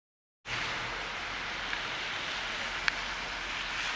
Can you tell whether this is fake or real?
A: real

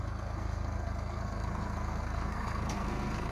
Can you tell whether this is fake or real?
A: fake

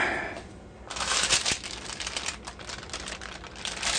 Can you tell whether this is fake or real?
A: real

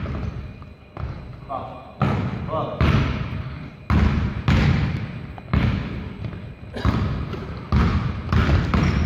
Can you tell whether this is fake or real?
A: real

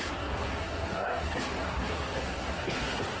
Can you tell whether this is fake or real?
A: fake